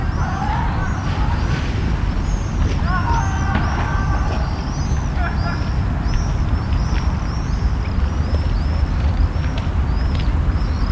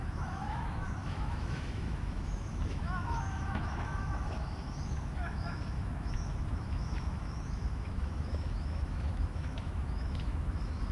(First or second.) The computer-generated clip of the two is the second